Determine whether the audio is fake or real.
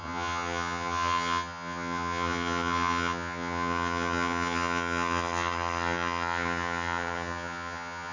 fake